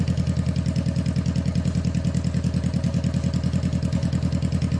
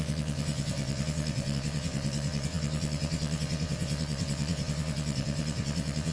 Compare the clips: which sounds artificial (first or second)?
second